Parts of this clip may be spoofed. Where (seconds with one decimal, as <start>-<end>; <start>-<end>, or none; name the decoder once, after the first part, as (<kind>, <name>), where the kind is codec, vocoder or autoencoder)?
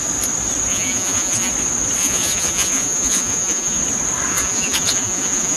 0.7-1.5 (vocoder, Vocos); 2.0-3.8; 4.3-5.6